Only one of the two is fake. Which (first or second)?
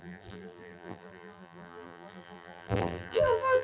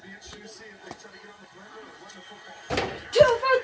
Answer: first